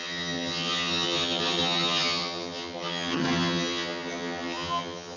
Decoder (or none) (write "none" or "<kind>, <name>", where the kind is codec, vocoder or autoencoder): vocoder, HiFi-GAN